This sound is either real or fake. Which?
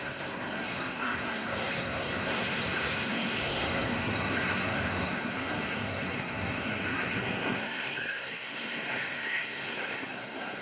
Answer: fake